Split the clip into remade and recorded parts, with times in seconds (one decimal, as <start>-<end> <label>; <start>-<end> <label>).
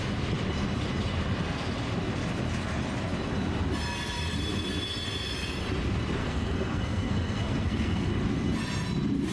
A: 0.0-6.2 recorded; 6.2-8.1 remade; 8.1-9.3 recorded